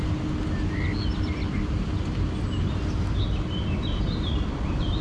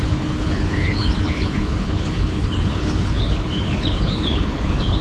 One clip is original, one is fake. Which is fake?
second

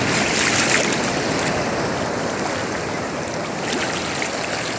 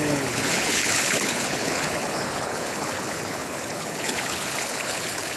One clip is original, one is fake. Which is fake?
second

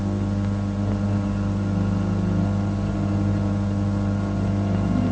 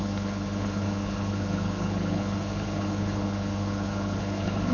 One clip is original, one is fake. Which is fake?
second